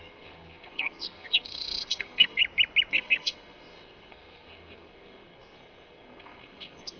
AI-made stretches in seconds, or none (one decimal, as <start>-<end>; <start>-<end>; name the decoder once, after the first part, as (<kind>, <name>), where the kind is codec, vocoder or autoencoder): 0.0-2.4 (codec, SNAC); 2.9-7.0